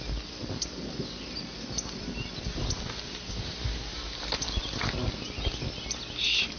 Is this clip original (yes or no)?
yes